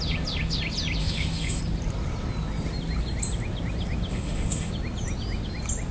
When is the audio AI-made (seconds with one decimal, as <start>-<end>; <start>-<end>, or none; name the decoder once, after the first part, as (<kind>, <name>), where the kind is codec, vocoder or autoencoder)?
1.0-1.6 (autoencoder, DAC-VAE); 4.1-4.7